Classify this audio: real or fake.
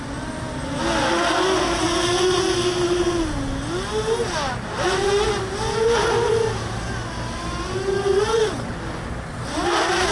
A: real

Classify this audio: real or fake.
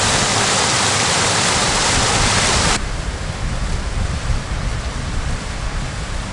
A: real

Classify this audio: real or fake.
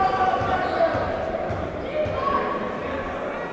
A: real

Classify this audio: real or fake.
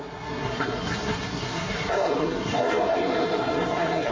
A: fake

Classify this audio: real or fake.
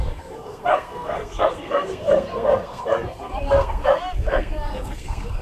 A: fake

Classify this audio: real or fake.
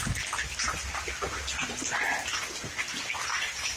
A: real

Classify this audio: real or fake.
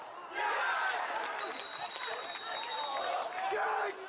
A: real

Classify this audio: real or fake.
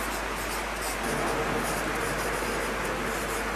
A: real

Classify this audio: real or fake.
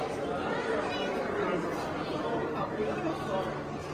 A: real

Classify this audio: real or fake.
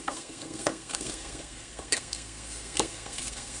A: fake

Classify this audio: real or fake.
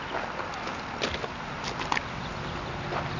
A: real